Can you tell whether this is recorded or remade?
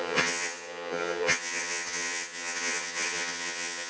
remade